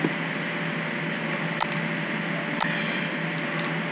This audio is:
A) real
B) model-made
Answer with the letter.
A